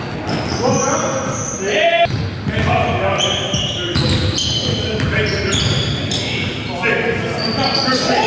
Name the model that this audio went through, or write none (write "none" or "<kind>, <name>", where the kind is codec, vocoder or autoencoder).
none